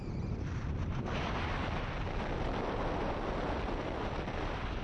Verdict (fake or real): real